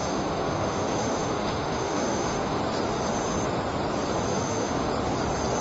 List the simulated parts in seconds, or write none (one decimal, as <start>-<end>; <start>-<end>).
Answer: 0.0-2.6; 4.3-4.9